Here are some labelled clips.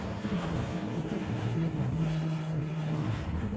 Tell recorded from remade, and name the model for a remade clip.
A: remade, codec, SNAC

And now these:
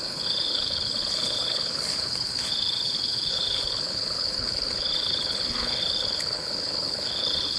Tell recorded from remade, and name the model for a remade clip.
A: remade, codec, HILCodec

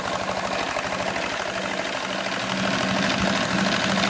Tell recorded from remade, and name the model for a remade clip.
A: recorded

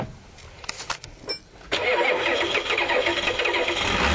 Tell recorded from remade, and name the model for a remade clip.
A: recorded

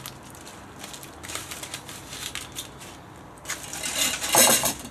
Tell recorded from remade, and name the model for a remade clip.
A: recorded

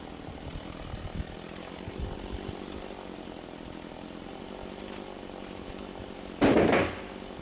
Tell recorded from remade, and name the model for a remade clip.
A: remade, vocoder, BigVGAN v2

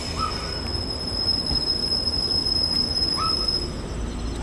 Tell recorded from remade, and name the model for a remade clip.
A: recorded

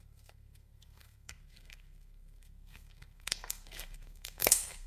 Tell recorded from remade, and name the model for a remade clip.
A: remade, codec, SNAC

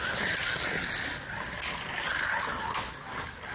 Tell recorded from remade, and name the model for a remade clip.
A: recorded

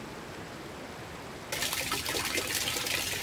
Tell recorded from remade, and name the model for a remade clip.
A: recorded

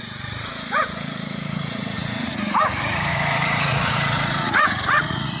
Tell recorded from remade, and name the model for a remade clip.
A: remade, vocoder, Vocos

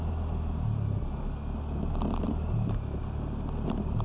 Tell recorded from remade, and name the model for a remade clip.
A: recorded